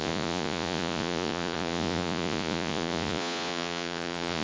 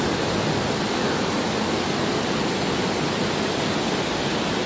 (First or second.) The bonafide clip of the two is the second